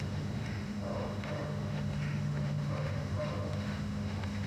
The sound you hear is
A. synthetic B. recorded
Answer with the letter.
A